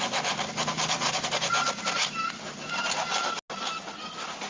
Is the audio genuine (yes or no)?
yes